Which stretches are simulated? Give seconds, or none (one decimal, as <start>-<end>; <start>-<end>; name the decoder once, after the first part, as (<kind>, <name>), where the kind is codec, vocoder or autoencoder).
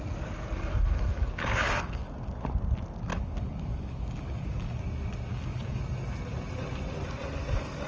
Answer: 1.1-2.3 (codec, DAC); 3.1-4.8; 5.3-5.8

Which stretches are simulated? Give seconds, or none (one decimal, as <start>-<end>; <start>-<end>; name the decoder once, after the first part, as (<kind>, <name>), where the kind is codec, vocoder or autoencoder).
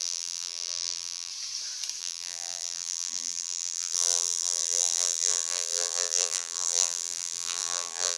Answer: 0.0-1.3 (vocoder, BigVGAN v2); 2.0-8.2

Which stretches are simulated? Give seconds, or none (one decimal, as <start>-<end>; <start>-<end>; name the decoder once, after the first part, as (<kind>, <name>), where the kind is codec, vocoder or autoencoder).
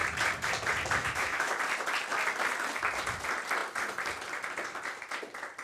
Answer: 1.0-1.5 (autoencoder, DAC-VAE)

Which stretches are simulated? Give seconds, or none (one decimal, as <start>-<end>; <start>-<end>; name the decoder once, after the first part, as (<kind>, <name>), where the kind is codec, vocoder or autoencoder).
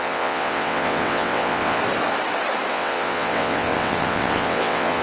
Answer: 0.0-1.8 (vocoder, WaveNeXt); 2.7-5.0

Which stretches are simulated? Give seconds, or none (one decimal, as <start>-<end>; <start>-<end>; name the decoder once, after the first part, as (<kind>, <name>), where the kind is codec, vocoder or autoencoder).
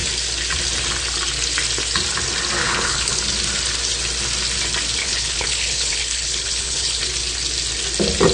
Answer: 2.6-3.2 (codec, HILCodec); 5.0-7.0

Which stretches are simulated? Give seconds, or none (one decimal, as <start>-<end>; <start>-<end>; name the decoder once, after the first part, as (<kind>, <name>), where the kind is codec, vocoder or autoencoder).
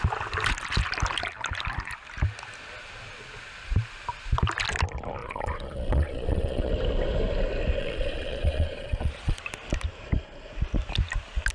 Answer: 5.2-6.7 (vocoder, Vocos); 7.8-9.4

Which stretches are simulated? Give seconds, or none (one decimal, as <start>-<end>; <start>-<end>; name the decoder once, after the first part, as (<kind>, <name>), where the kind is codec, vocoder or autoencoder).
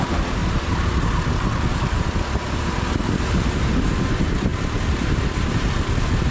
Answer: 0.0-0.4 (vocoder, BigVGAN v2); 2.0-6.3